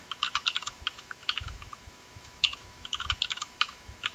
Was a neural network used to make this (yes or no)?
yes